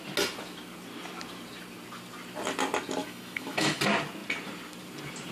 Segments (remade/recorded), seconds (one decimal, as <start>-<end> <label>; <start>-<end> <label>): 0.0-3.0 recorded; 3.0-3.8 remade; 3.8-5.3 recorded